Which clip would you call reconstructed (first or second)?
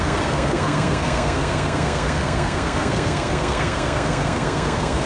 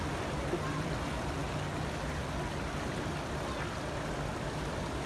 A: first